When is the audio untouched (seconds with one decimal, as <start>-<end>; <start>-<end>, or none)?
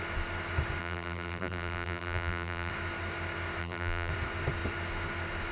0.0-0.8; 2.7-3.6; 4.1-5.5